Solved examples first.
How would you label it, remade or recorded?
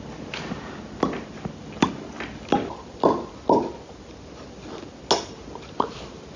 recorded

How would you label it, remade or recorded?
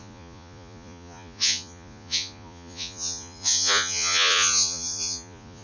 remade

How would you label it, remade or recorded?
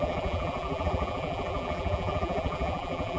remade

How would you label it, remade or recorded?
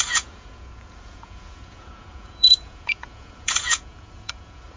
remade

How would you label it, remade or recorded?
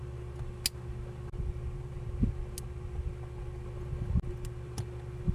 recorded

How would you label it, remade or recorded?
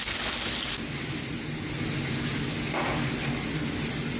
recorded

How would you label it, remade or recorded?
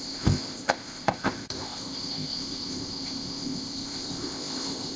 remade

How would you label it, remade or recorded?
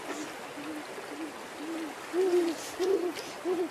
recorded